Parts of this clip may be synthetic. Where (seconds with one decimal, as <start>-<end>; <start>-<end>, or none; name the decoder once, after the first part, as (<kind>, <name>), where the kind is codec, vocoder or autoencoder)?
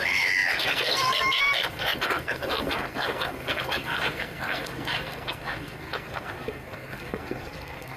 0.0-8.0 (codec, SNAC)